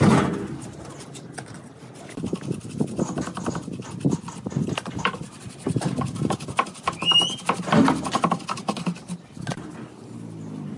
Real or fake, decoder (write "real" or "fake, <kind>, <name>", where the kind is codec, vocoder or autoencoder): real